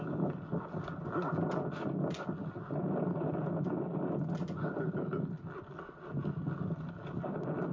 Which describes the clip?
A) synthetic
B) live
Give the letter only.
B